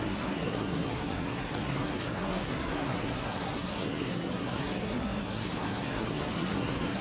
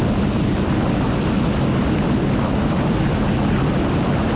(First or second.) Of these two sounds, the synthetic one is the first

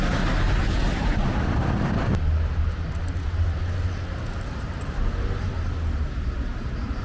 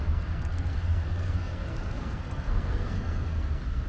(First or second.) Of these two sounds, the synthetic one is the second